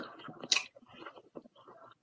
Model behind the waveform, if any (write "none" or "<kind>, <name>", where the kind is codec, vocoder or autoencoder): none